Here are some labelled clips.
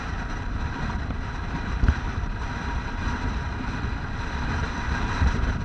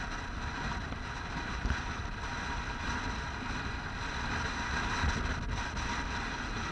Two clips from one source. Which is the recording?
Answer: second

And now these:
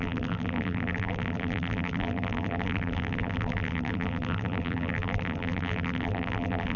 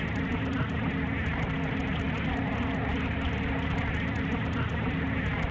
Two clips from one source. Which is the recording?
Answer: second